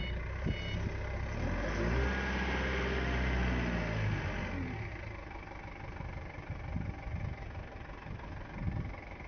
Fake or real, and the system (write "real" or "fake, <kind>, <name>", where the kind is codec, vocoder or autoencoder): real